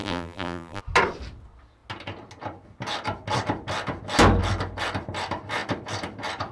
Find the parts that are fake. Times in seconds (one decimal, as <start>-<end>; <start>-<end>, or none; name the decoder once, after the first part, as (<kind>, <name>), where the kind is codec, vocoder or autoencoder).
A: 0.0-0.8 (vocoder, BigVGAN v2)